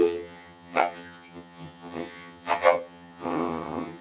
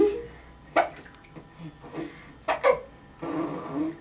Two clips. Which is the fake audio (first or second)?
first